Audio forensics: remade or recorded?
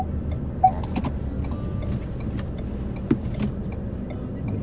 recorded